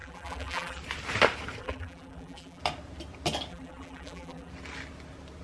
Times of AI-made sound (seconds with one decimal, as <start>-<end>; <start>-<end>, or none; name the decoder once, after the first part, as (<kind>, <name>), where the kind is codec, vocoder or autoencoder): 0.0-0.8 (vocoder, BigVGAN v2); 1.6-2.6; 3.5-4.5